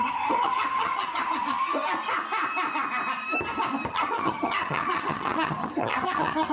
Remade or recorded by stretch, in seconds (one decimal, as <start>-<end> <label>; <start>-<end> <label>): 0.0-1.7 remade; 1.7-3.9 recorded; 3.9-6.5 remade